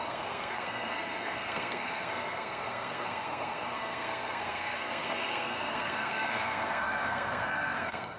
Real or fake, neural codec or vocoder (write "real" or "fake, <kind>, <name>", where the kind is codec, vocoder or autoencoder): fake, codec, SNAC